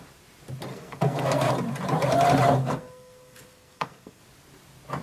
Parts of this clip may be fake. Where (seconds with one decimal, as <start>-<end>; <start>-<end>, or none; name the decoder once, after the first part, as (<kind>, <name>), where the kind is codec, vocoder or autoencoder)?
0.7-1.5 (codec, SNAC); 2.6-4.2